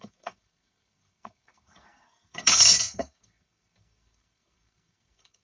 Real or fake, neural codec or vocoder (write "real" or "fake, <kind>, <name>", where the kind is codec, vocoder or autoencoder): fake, codec, SNAC